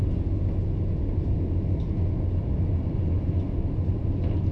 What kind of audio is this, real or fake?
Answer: real